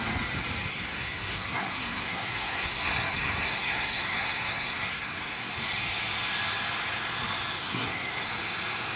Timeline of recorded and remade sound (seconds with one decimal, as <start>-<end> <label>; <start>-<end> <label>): 0.0-0.7 recorded; 0.7-5.5 remade; 5.5-7.6 recorded; 7.6-8.3 remade; 8.3-9.0 recorded